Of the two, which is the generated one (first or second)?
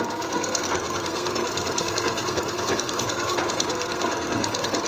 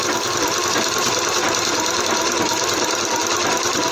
first